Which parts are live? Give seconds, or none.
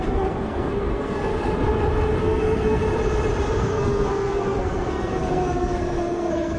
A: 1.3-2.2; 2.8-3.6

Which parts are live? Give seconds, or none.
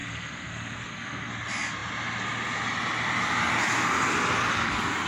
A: 1.3-5.1